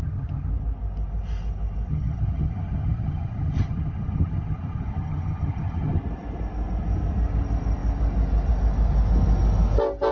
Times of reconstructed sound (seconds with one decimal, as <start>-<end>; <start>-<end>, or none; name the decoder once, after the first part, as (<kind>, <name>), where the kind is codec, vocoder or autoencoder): 0.0-0.5 (vocoder, HiFi-GAN); 1.9-6.0